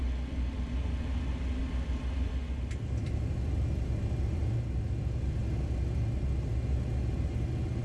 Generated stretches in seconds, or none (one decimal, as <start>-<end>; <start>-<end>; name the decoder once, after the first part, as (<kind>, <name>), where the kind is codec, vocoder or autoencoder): none